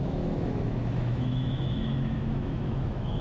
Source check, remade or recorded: remade